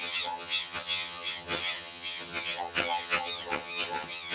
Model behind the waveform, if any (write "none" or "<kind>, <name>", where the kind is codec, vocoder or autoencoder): vocoder, HiFi-GAN